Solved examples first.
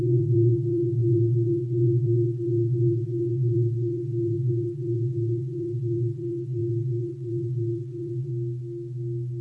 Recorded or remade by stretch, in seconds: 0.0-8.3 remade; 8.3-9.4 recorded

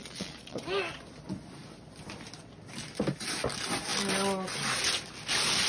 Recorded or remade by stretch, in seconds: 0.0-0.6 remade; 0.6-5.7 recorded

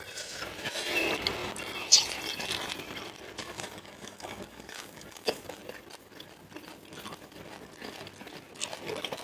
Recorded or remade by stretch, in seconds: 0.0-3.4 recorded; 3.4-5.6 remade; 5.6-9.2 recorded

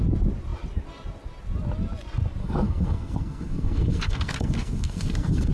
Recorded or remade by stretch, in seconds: 0.0-2.4 recorded; 2.4-5.5 remade

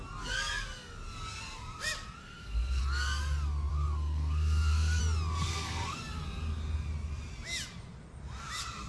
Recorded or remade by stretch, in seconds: 0.0-2.2 recorded; 2.2-2.8 remade; 2.8-3.7 recorded; 3.7-5.0 remade; 5.0-5.4 recorded; 5.4-6.0 remade; 6.0-8.9 recorded